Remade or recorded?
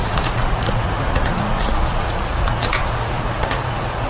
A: remade